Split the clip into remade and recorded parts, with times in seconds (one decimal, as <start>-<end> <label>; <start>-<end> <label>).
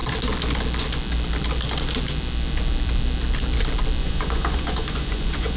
0.0-4.0 recorded; 4.0-5.6 remade